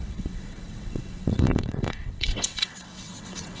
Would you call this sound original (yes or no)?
no